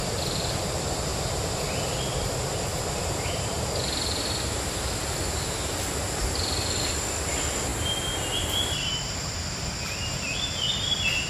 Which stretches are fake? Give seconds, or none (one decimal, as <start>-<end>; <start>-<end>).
1.1-1.7; 2.7-3.7